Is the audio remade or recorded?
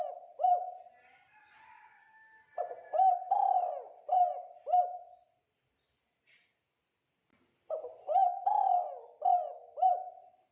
recorded